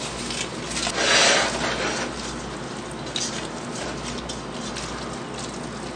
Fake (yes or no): no